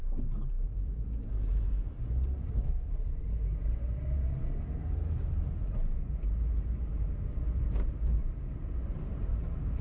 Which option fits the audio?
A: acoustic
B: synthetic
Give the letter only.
B